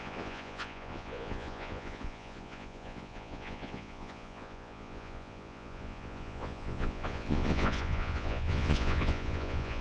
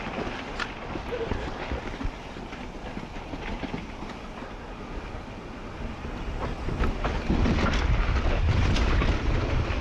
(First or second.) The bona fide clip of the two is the second